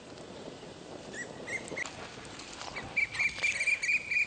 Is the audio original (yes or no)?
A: yes